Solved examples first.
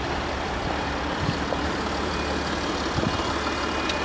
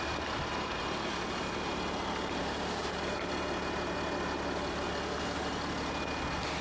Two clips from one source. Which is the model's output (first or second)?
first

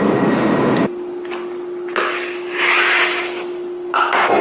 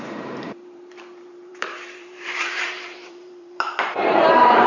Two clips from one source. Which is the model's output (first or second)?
second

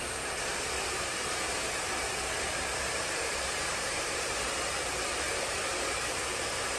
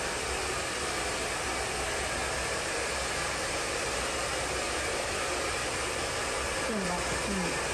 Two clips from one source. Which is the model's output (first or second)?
first